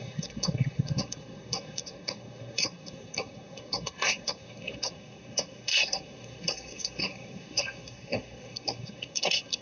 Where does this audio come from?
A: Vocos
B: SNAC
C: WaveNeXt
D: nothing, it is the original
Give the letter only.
B